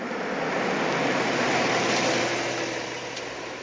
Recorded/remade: recorded